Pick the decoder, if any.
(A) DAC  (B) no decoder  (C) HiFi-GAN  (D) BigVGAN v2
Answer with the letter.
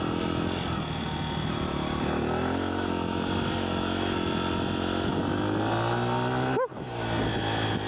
B